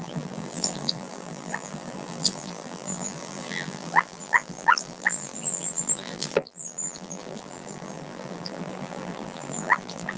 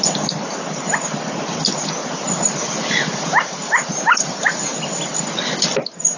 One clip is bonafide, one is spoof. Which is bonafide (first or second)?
second